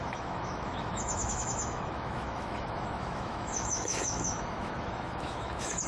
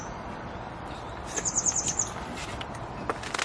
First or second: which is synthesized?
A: first